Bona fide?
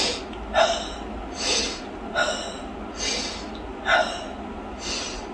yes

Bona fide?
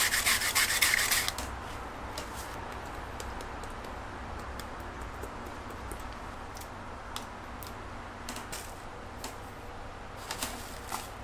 yes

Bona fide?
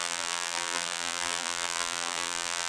no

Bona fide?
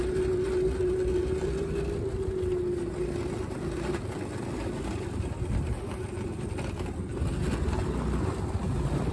yes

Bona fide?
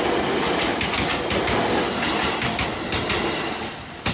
yes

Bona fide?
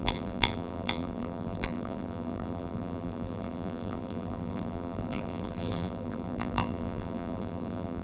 no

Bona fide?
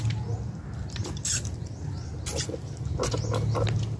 yes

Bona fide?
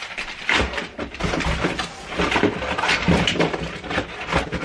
yes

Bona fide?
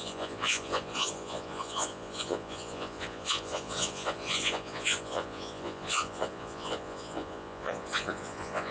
no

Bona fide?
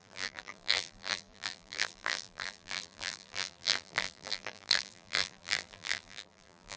no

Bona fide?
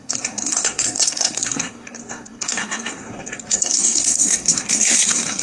no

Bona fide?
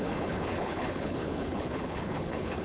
no